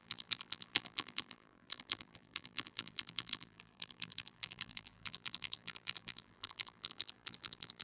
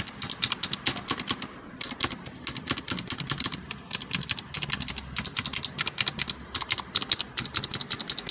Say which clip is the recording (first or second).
second